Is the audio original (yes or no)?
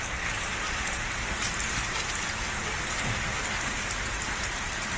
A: yes